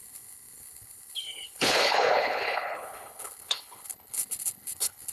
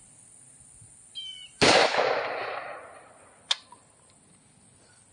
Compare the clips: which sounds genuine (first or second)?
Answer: second